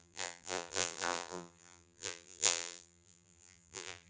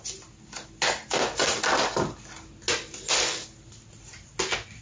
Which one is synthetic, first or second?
first